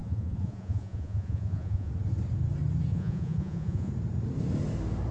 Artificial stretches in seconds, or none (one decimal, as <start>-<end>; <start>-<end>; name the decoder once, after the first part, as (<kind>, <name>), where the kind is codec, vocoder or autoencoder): 0.0-1.9 (vocoder, Vocos); 2.9-3.9